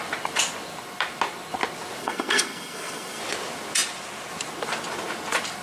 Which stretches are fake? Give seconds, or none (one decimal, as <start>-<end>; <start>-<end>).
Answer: 2.0-3.2